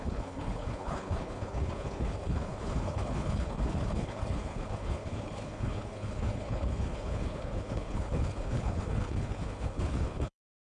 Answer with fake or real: fake